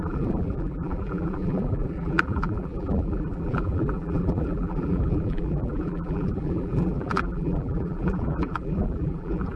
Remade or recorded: remade